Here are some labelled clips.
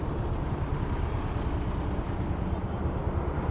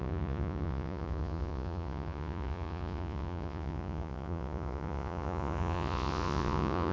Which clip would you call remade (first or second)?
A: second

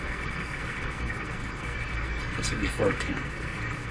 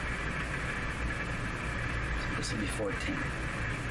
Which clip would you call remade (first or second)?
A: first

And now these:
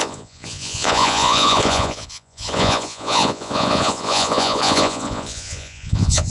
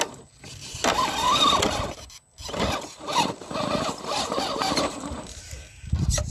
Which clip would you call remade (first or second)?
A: first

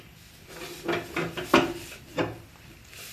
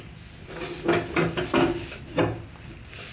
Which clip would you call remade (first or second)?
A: first